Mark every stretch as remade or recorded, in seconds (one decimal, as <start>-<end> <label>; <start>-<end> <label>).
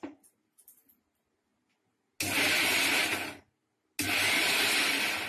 0.0-5.3 recorded